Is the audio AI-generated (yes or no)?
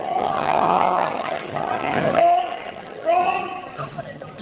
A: yes